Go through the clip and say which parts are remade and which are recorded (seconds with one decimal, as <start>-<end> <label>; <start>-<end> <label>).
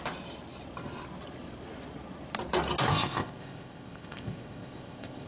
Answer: 0.0-2.9 recorded; 2.9-5.3 remade